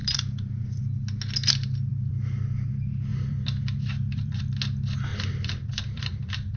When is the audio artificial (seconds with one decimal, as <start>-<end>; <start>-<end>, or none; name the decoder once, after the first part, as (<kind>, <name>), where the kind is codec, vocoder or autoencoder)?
0.0-0.8 (vocoder, BigVGAN v2); 1.9-2.7; 3.1-4.4; 5.1-6.6